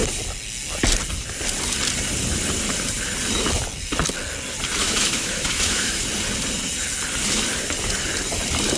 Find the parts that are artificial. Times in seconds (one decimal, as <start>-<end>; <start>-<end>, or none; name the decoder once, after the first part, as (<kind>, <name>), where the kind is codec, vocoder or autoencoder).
4.8-6.0 (autoencoder, DAC-VAE)